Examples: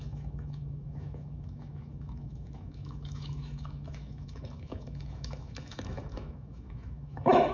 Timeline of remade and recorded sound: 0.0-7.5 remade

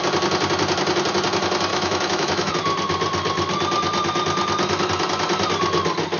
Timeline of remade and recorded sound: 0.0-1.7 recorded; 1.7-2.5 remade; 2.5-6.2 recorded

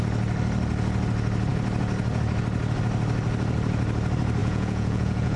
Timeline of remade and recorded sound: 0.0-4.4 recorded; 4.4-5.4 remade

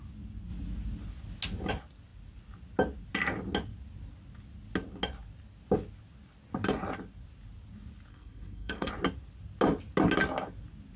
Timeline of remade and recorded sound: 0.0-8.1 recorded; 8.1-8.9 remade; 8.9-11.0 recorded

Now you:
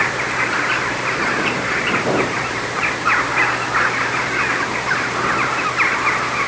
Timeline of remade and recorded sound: 0.0-3.1 remade; 3.1-6.5 recorded

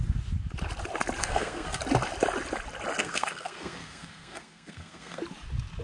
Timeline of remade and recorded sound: 0.0-1.2 recorded; 1.2-1.8 remade; 1.8-3.0 recorded; 3.0-5.2 remade; 5.2-5.8 recorded